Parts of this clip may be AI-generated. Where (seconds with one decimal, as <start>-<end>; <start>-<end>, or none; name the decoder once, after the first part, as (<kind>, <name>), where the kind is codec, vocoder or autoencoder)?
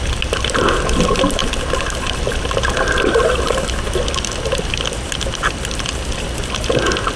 none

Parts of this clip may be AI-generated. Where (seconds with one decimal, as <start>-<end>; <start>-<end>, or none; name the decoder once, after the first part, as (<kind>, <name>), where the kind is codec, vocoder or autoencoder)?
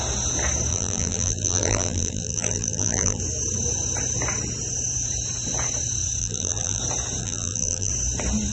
0.7-3.2 (vocoder, BigVGAN v2); 6.2-6.8; 7.2-7.9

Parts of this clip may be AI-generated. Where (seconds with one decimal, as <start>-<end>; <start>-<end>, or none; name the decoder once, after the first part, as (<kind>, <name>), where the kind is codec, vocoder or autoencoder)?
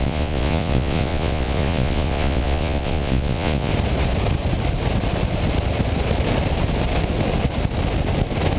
0.0-3.7 (vocoder, Vocos)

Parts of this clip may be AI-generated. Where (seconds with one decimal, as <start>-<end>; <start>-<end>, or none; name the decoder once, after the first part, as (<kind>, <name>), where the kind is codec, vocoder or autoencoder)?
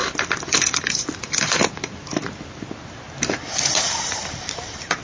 0.8-2.1 (vocoder, BigVGAN v2); 3.5-5.0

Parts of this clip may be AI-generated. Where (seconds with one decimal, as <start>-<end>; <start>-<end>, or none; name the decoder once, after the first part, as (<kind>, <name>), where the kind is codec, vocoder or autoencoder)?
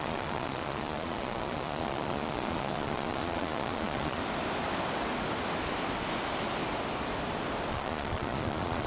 0.0-4.2 (vocoder, Vocos); 7.7-8.9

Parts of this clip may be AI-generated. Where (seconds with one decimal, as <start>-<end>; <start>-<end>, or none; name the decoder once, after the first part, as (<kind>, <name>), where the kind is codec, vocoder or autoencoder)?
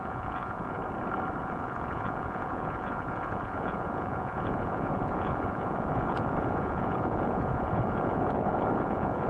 0.0-0.8 (vocoder, Vocos); 1.4-9.3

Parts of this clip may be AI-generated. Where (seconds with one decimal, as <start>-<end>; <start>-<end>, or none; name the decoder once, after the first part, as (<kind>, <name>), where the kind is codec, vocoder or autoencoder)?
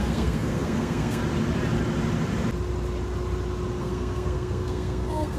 0.0-1.2 (codec, SNAC); 3.8-5.4